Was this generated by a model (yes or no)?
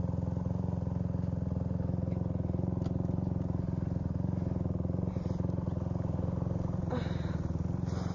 no